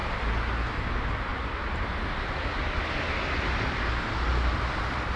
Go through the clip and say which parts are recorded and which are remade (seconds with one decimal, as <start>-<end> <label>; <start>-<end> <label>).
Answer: 0.0-1.3 recorded; 1.3-3.9 remade; 3.9-5.2 recorded